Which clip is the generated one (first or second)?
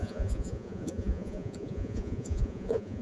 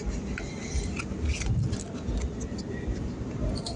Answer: first